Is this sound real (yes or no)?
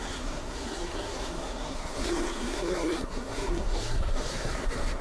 no